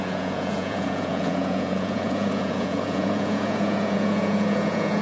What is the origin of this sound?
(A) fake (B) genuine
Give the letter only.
A